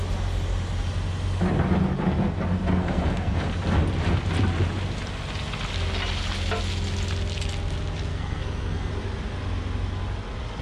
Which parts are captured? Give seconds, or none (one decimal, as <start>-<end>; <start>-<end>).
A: 0.0-2.8; 3.4-8.1; 8.9-10.6